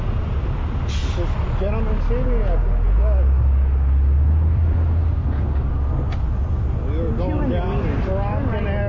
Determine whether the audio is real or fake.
real